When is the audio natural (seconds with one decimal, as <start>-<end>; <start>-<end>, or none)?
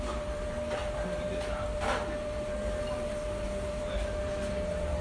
0.0-5.0